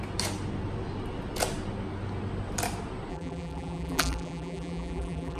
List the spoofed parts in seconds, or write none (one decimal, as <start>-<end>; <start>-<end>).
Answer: 3.1-5.4